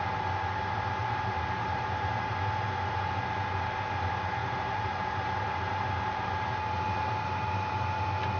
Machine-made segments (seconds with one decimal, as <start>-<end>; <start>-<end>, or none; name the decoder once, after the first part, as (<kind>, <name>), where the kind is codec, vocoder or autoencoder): 1.0-2.3 (vocoder, BigVGAN v2); 4.4-7.7